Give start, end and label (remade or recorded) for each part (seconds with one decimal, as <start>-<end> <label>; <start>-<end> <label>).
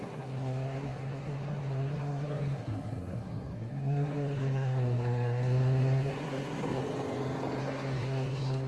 0.0-6.8 remade; 6.8-7.6 recorded; 7.6-8.7 remade